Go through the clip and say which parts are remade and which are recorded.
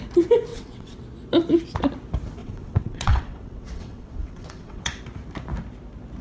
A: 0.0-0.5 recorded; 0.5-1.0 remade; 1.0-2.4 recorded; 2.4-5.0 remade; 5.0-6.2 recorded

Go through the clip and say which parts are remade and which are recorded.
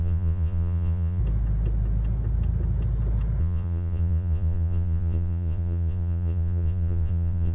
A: 0.0-1.2 remade; 1.2-3.4 recorded; 3.4-7.5 remade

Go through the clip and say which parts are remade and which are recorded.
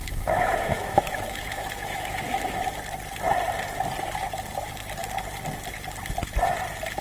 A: 0.0-2.6 remade; 2.6-7.0 recorded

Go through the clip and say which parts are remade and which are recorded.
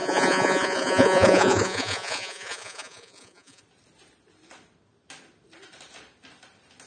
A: 0.0-3.6 remade; 3.6-6.9 recorded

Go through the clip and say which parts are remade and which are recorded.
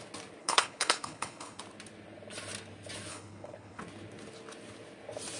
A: 0.0-0.4 recorded; 0.4-1.6 remade; 1.6-3.1 recorded; 3.1-3.8 remade; 3.8-5.4 recorded